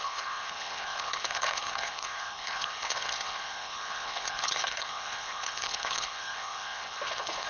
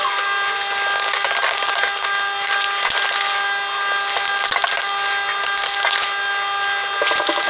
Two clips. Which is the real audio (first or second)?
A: second